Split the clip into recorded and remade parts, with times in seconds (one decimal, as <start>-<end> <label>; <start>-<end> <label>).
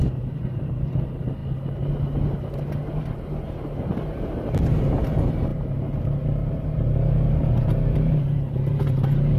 0.0-5.5 recorded; 5.5-9.4 remade